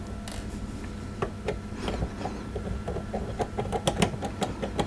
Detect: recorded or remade recorded